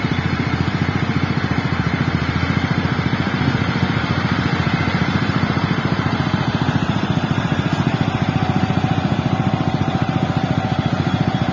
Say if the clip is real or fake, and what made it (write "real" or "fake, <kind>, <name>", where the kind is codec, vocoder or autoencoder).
fake, vocoder, BigVGAN v2